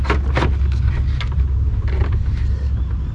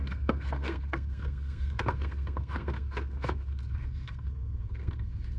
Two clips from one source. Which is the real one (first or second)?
first